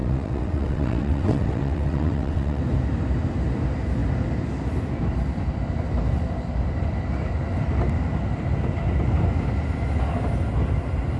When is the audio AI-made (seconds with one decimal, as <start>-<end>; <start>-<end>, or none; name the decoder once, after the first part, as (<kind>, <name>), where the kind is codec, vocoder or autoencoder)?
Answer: 0.0-2.6 (vocoder, WaveNeXt)